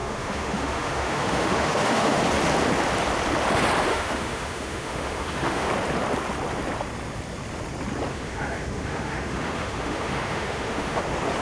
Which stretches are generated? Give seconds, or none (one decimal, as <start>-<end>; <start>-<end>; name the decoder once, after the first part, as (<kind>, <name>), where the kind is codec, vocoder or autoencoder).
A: 0.0-2.2 (autoencoder, DAC-VAE); 3.9-5.7; 8.1-11.0